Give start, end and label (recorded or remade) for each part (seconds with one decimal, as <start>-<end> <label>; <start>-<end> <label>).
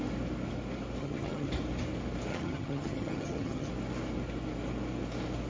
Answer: 0.0-1.0 recorded; 1.0-1.5 remade; 1.5-2.3 recorded; 2.3-3.7 remade; 3.7-5.5 recorded